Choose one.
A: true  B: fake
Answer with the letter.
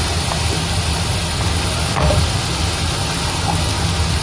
A